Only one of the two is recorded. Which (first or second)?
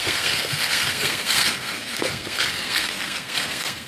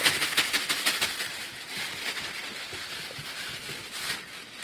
second